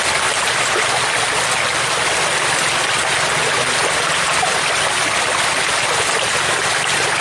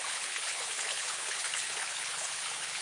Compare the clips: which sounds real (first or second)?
first